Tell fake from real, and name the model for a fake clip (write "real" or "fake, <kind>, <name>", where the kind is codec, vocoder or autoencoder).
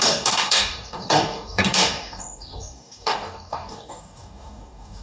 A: fake, codec, DAC